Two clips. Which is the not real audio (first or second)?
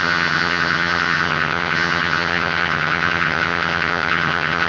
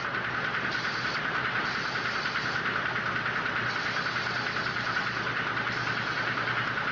first